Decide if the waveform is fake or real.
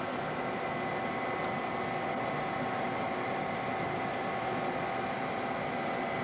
real